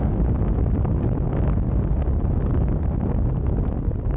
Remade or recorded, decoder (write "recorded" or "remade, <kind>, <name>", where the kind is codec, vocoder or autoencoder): recorded